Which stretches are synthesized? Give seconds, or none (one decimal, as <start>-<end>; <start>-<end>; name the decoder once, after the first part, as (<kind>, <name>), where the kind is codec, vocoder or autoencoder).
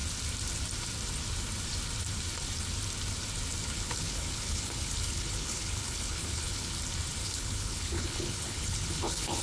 3.6-6.7 (codec, HILCodec); 7.2-9.4